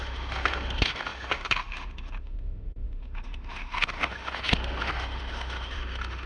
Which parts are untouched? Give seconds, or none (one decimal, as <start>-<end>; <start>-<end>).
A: none